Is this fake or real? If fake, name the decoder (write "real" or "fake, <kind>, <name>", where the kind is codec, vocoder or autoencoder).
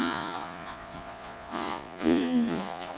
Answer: fake, vocoder, Vocos